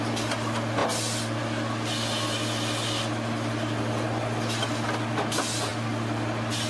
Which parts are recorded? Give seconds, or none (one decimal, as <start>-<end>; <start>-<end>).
0.0-6.7